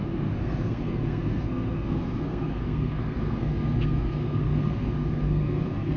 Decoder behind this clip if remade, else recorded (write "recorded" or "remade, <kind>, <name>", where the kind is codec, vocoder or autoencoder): remade, codec, SNAC